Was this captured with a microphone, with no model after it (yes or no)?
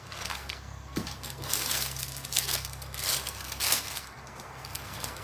no